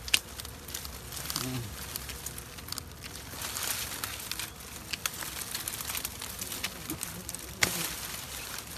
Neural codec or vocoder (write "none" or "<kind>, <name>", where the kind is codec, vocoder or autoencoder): none